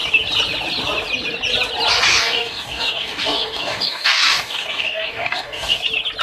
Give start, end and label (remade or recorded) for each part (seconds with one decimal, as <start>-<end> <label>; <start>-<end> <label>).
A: 0.0-2.1 recorded; 2.1-5.8 remade; 5.8-6.2 recorded